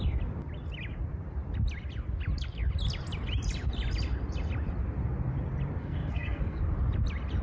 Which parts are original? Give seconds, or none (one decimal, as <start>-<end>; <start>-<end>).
0.0-5.8; 6.6-7.4